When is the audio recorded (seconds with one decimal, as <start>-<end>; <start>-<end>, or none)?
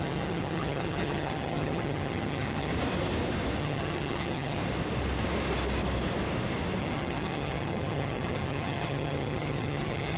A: 2.7-3.6; 4.6-6.8